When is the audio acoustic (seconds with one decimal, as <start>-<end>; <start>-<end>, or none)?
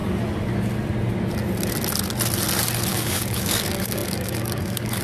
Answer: 0.0-2.9